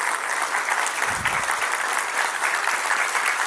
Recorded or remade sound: recorded